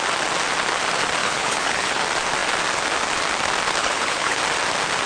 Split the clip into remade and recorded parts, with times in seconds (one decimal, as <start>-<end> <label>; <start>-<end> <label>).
0.0-1.2 recorded; 1.2-2.0 remade; 2.0-3.8 recorded; 3.8-4.4 remade; 4.4-5.1 recorded